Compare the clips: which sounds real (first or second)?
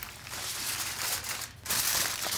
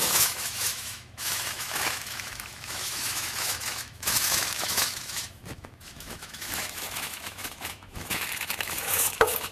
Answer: first